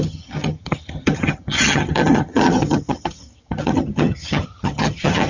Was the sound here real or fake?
fake